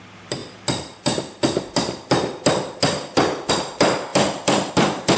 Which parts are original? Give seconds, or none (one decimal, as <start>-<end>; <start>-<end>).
0.4-3.5; 4.1-4.7